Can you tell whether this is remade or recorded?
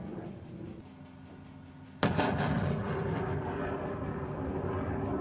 recorded